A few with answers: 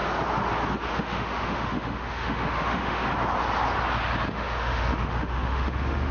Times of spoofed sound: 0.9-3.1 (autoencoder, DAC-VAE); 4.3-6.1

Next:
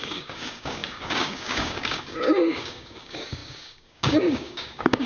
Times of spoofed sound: 0.0-5.1 (codec, DAC)